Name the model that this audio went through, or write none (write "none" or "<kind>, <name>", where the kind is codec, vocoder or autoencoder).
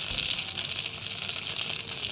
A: none